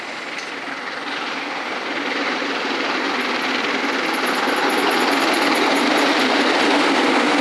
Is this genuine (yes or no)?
yes